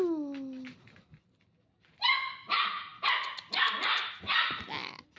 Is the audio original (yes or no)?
yes